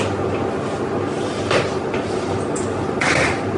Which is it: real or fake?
real